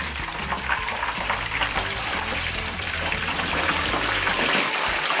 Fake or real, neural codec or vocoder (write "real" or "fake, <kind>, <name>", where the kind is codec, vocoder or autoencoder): fake, vocoder, BigVGAN v2